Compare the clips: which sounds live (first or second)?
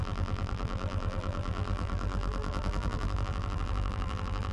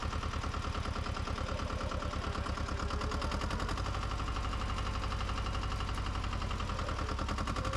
second